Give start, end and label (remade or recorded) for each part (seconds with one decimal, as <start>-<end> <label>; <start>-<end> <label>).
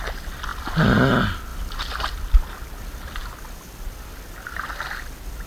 0.0-5.5 recorded